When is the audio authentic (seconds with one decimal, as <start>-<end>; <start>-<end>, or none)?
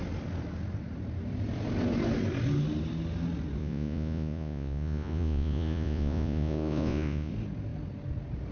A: 0.0-3.6; 7.3-8.5